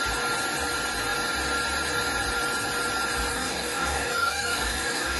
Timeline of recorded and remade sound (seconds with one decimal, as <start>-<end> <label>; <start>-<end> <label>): 0.0-3.3 recorded; 3.3-5.2 remade

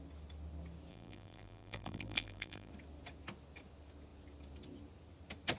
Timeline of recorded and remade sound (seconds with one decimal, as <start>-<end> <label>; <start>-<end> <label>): 0.0-0.9 recorded; 0.9-2.7 remade; 2.7-5.6 recorded

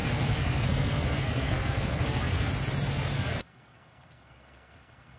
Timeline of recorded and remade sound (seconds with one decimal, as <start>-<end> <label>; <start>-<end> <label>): 0.0-2.5 remade; 2.5-2.9 recorded; 2.9-5.2 remade

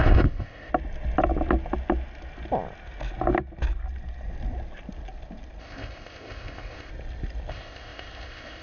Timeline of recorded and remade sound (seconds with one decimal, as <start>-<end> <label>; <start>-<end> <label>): 0.0-0.7 remade; 0.7-5.6 recorded; 5.6-6.9 remade; 6.9-7.5 recorded; 7.5-8.6 remade

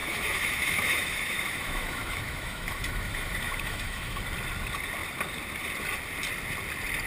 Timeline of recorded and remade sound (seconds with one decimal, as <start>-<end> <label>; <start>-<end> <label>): 0.0-4.2 remade; 4.2-7.1 recorded

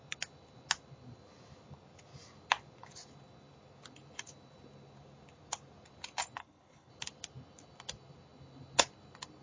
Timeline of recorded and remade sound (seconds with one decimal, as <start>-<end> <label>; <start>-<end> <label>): 0.0-6.4 recorded; 6.4-6.9 remade; 6.9-9.4 recorded

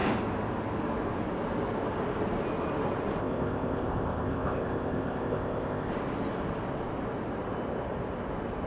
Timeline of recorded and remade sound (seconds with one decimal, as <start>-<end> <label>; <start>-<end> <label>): 0.0-3.2 recorded; 3.2-5.9 remade; 5.9-8.7 recorded

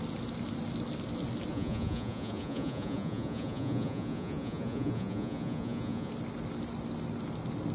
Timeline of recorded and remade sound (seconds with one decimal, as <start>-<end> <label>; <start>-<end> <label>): 0.0-1.5 recorded; 1.5-6.1 remade; 6.1-7.7 recorded